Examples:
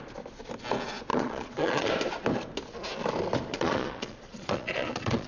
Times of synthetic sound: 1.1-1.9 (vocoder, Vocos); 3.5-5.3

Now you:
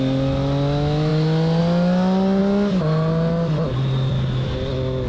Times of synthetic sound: none

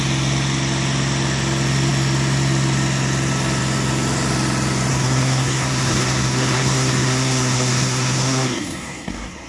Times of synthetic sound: 4.9-9.5 (codec, SNAC)

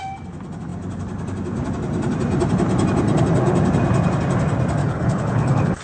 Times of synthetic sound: 4.8-5.8 (codec, HILCodec)

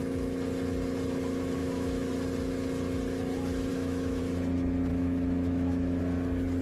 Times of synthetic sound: 1.6-2.1 (autoencoder, DAC-VAE); 3.7-4.2; 4.9-6.0

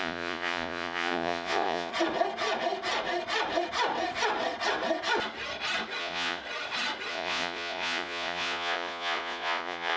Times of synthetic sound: 0.0-1.9 (vocoder, Vocos); 6.0-6.4; 7.1-10.0